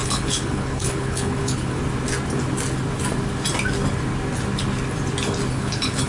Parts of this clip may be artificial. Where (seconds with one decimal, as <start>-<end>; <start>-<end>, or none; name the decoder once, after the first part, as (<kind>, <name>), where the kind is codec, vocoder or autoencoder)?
0.0-1.8 (codec, HILCodec); 5.5-6.1